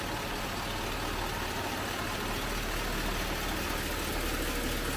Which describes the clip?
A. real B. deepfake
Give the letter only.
A